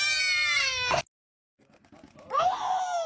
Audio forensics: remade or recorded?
recorded